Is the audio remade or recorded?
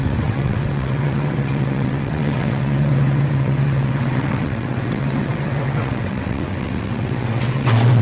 remade